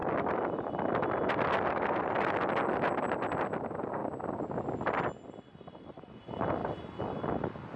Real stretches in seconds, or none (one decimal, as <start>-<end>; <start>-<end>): 0.0-4.0; 5.0-7.8